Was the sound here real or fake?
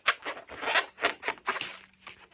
real